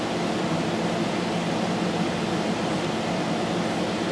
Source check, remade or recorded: recorded